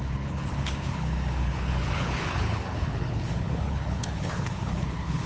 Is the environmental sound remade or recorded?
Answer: remade